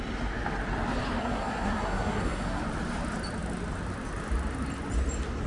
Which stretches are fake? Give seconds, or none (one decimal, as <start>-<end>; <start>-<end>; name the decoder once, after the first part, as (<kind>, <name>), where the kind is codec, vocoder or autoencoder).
1.2-2.6 (codec, SNAC)